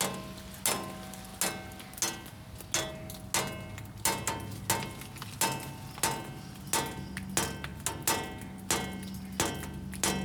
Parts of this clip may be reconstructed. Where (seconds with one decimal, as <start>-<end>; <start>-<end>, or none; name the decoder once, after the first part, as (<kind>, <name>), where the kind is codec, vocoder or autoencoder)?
none